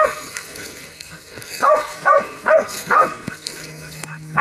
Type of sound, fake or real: fake